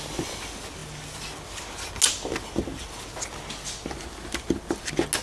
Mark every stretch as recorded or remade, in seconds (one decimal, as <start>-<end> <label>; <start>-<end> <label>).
0.0-5.2 recorded